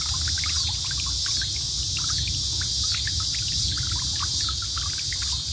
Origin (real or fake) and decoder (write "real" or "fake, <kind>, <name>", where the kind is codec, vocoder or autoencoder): real